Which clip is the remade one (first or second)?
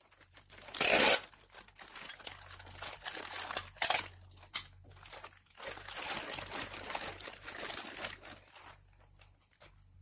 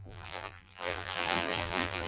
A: second